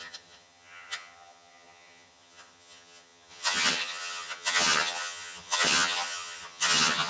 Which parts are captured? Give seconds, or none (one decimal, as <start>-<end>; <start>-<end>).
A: none